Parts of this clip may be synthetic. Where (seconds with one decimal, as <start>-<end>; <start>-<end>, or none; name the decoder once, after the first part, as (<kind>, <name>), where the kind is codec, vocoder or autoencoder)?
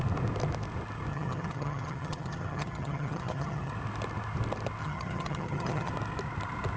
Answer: 1.1-3.7 (vocoder, HiFi-GAN); 4.8-5.9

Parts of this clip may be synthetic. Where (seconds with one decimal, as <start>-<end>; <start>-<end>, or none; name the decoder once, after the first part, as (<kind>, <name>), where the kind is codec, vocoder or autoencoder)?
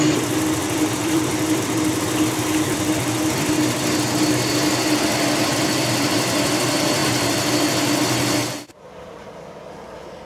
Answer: 0.6-3.5 (vocoder, BigVGAN v2); 5.5-6.6; 7.0-7.5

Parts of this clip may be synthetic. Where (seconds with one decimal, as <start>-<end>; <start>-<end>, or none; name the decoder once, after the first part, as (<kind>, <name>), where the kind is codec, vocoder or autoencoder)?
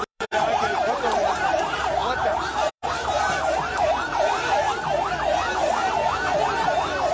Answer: 0.0-4.1 (vocoder, BigVGAN v2)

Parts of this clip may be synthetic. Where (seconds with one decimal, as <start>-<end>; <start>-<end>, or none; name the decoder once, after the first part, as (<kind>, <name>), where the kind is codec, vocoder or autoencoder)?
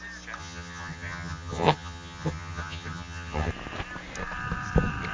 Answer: 0.4-3.5 (vocoder, HiFi-GAN)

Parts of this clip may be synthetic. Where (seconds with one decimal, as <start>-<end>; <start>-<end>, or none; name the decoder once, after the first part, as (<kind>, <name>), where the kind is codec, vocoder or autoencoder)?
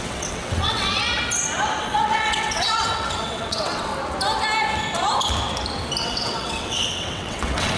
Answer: 0.0-1.0 (vocoder, WaveNeXt); 1.8-3.9; 6.0-7.8